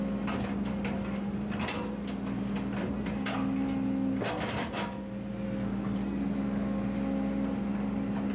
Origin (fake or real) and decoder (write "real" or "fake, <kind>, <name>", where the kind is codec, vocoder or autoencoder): real